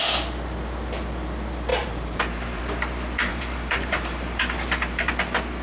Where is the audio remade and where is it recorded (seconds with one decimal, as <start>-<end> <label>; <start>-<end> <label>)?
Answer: 0.0-1.7 recorded; 1.7-2.6 remade; 2.6-3.3 recorded; 3.3-5.1 remade; 5.1-5.6 recorded